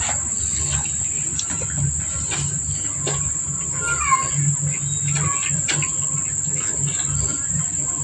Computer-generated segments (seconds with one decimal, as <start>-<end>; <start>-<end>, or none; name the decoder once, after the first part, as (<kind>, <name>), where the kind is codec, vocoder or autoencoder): none